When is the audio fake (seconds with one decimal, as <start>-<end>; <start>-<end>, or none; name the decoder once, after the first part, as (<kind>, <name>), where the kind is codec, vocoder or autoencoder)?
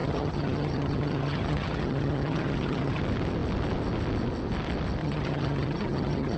0.0-3.0 (vocoder, HiFi-GAN); 5.0-6.4